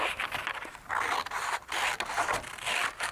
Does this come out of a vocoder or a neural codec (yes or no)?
no